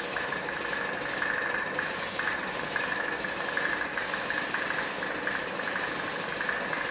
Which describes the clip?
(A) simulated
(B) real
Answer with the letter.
B